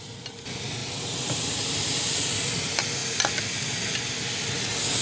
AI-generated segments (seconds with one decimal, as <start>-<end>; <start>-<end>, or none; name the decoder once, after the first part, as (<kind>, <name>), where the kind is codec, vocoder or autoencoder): 0.8-1.5 (vocoder, BigVGAN v2)